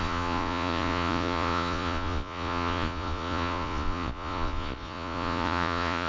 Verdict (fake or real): fake